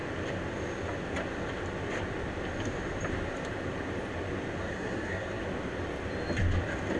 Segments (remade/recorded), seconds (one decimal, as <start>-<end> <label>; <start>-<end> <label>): 0.0-4.6 recorded; 4.6-5.4 remade; 5.4-7.0 recorded